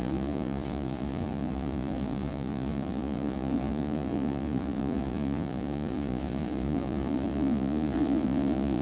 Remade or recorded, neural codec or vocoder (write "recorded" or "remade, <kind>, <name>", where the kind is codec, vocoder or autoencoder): remade, vocoder, Vocos